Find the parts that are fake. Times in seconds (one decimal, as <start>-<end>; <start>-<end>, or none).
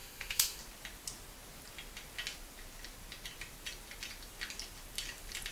0.0-0.6